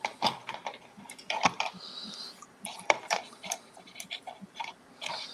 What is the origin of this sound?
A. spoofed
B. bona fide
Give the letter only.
A